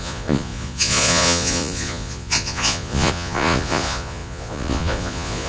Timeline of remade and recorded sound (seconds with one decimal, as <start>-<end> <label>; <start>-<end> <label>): 0.0-5.5 remade

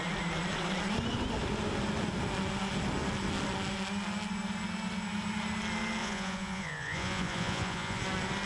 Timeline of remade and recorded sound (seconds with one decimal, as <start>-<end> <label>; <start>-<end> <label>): 0.0-6.0 recorded; 6.0-8.0 remade; 8.0-8.5 recorded

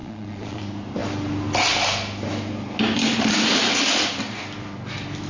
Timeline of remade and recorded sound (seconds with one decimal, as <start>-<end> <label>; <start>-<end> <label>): 0.0-0.6 remade; 0.6-5.3 recorded

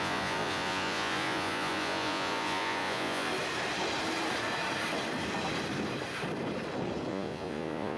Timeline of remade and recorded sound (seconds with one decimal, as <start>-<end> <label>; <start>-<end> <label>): 0.0-3.3 remade; 3.3-7.1 recorded; 7.1-8.0 remade

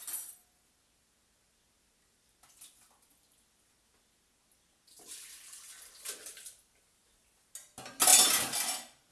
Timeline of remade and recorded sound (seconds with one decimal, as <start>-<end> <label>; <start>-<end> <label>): 0.0-9.1 recorded

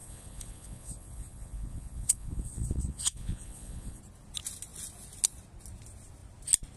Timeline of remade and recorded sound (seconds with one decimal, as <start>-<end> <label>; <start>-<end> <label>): 0.0-4.0 remade; 4.0-6.8 recorded